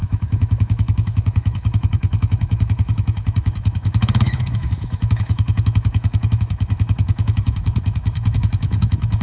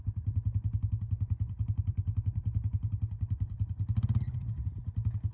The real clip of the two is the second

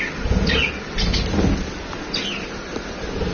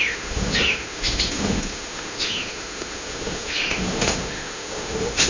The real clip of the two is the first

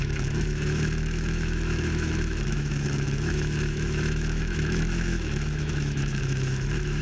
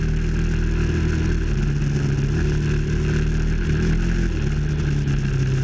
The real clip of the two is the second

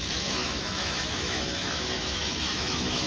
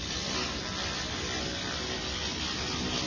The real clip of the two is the second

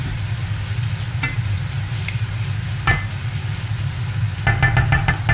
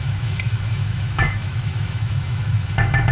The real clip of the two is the first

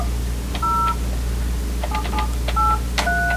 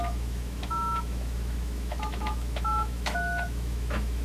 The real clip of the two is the first